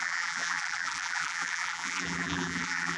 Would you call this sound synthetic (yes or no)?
yes